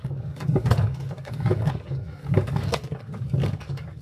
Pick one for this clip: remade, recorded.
remade